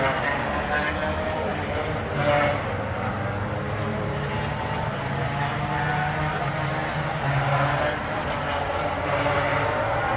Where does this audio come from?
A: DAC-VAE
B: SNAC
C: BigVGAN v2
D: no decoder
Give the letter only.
D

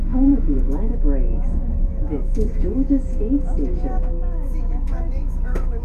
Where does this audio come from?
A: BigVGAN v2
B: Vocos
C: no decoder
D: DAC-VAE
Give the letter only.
D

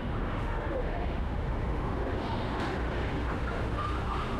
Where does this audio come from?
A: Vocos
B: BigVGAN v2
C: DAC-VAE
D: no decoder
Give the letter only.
C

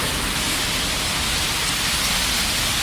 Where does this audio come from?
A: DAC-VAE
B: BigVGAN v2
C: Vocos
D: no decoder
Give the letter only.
D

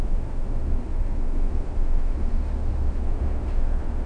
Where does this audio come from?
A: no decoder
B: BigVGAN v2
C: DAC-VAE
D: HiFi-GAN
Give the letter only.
C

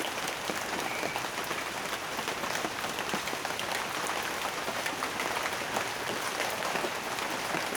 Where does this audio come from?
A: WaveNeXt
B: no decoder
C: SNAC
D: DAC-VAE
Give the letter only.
B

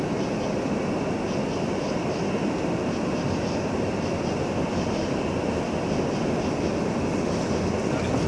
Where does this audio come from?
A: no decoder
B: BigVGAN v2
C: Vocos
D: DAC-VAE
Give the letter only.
A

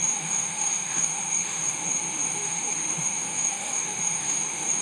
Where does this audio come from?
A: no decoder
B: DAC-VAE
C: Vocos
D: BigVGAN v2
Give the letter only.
B